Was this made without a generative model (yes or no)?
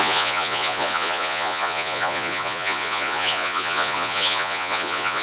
no